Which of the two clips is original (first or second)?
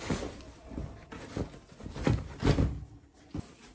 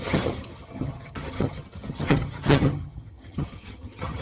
first